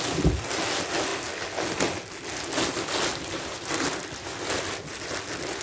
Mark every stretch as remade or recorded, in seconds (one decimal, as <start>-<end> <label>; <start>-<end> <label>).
0.0-3.1 recorded; 3.1-4.9 remade; 4.9-5.6 recorded